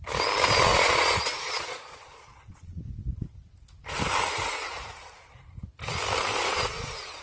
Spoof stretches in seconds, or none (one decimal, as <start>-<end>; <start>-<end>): 0.7-2.8; 6.3-7.2